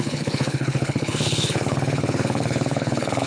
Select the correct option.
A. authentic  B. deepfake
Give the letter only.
B